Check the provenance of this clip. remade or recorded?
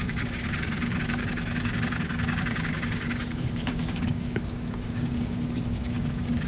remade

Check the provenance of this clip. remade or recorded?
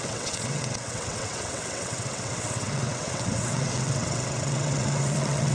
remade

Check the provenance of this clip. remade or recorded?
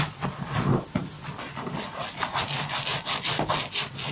recorded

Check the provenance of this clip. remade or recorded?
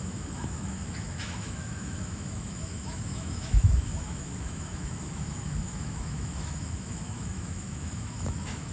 remade